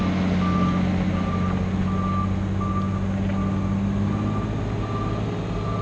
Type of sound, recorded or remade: recorded